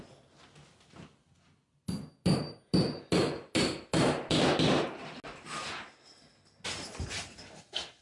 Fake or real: real